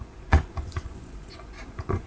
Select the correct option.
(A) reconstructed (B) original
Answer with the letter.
A